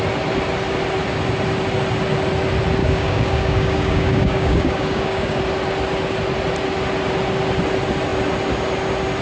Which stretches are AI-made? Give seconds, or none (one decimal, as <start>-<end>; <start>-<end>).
2.8-5.4